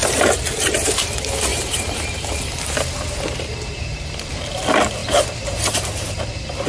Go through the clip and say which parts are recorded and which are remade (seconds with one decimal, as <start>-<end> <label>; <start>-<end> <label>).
0.0-1.5 recorded; 1.5-4.4 remade; 4.4-5.0 recorded; 5.0-6.1 remade; 6.1-6.7 recorded